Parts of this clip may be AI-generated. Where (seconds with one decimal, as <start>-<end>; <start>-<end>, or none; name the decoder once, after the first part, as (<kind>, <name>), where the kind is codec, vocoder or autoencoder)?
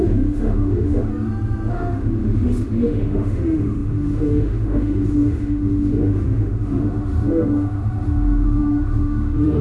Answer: 0.0-1.1 (autoencoder, DAC-VAE); 1.7-9.6